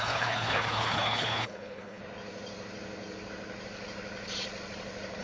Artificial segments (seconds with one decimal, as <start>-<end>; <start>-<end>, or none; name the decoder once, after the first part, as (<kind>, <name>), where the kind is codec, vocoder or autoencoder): 0.0-2.0 (codec, HILCodec)